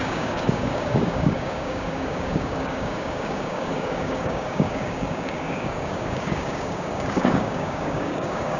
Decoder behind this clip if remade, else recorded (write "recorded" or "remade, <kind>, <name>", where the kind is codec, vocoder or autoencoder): remade, codec, DAC